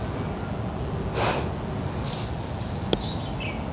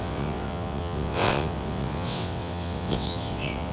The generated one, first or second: second